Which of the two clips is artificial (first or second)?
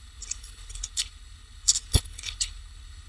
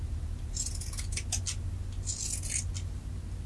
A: first